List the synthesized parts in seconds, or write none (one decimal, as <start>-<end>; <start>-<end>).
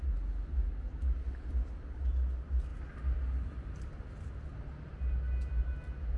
none